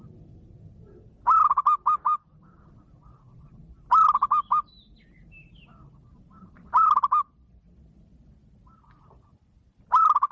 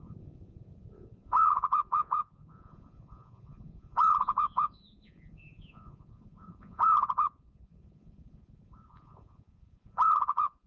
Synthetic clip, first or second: second